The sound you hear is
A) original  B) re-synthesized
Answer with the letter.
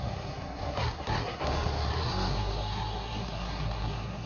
B